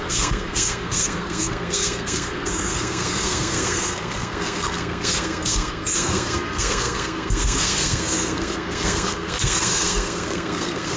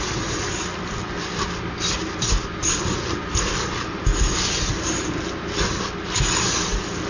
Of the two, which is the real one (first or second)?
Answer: second